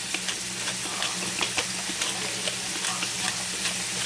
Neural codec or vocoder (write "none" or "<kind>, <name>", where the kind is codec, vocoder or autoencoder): none